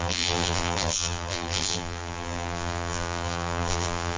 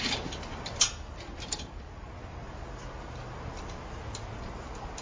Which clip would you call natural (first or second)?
second